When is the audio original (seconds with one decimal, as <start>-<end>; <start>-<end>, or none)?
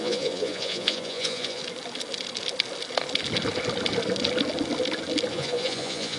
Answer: 1.6-5.3